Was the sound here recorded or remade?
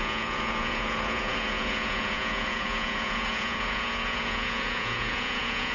remade